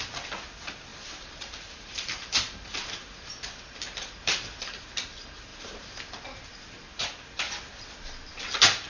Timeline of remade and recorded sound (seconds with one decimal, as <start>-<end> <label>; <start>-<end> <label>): 0.0-0.9 recorded; 0.9-4.9 remade; 4.9-5.5 recorded; 5.5-6.0 remade; 6.0-6.5 recorded; 6.5-7.5 remade; 7.5-8.9 recorded